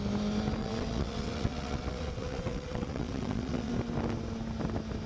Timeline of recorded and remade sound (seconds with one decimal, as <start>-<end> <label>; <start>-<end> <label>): 0.0-0.6 recorded; 0.6-3.7 remade; 3.7-5.1 recorded